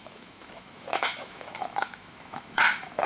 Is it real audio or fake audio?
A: fake